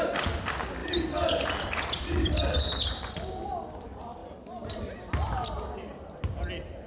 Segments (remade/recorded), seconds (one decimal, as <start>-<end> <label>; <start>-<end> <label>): 0.0-0.8 recorded; 0.8-2.6 remade; 2.6-4.2 recorded; 4.2-6.5 remade; 6.5-6.9 recorded